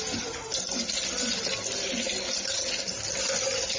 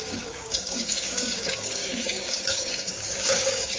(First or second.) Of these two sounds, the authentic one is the first